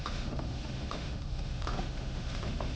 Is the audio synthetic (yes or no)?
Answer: yes